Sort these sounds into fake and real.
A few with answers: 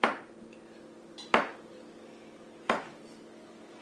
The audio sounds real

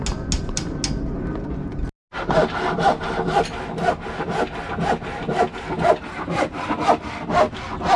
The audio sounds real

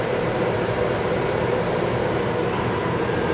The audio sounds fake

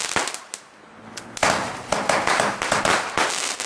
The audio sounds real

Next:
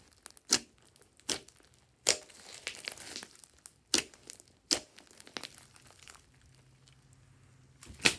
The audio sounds real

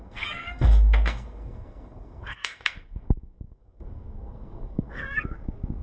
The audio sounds fake